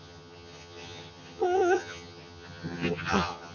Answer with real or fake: fake